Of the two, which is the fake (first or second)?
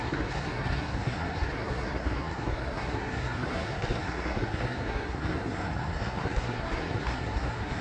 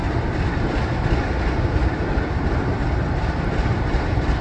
first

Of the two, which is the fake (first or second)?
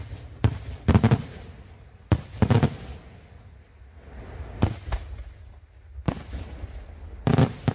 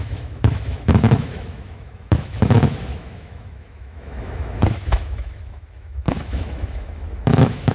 second